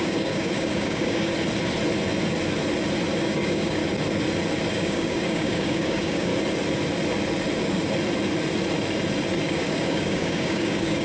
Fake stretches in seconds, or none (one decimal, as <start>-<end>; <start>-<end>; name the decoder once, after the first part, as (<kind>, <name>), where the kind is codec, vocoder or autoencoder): 0.0-1.3 (codec, DAC); 3.1-3.8; 4.7-6.3; 9.4-11.0